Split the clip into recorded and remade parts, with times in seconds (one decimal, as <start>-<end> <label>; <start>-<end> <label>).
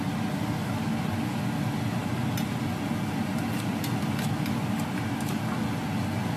0.0-6.4 recorded